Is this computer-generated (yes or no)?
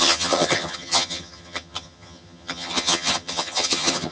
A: yes